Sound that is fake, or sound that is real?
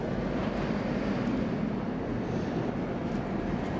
fake